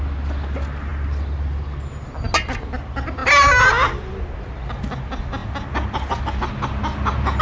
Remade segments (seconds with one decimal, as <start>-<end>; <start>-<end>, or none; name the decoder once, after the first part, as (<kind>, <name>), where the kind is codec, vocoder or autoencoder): none